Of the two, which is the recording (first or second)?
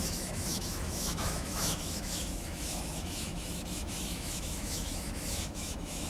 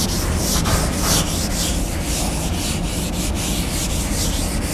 second